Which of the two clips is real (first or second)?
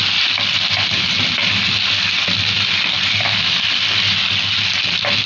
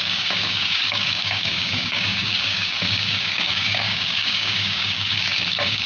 first